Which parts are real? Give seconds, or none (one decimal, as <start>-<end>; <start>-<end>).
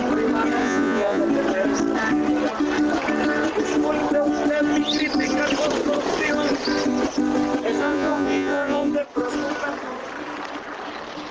0.0-0.6; 1.2-7.8; 8.9-11.3